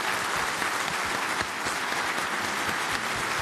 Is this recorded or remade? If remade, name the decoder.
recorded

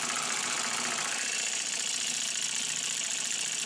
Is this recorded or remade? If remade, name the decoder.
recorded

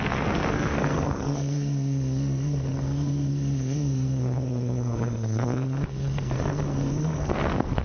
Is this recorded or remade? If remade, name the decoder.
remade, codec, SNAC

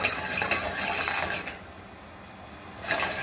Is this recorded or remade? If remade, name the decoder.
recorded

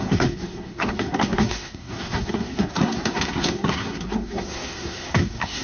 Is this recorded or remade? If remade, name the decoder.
remade, codec, SNAC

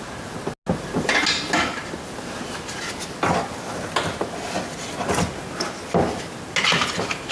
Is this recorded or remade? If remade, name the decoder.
recorded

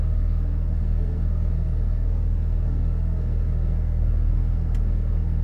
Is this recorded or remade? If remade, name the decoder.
remade, codec, SNAC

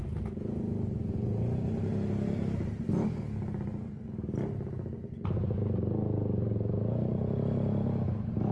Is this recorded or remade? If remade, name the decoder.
recorded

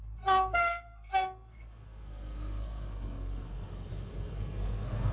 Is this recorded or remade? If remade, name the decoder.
remade, codec, SNAC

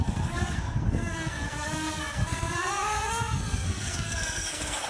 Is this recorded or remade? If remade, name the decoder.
remade, codec, SNAC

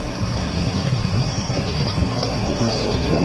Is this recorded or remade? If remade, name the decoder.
remade, codec, SNAC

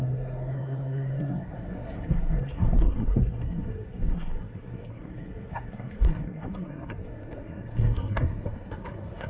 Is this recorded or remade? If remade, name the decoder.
remade, codec, SNAC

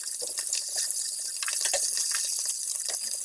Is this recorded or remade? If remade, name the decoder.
recorded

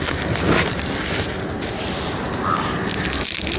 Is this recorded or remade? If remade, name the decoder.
recorded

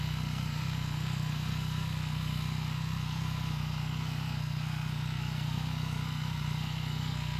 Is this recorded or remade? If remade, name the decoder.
remade, codec, SNAC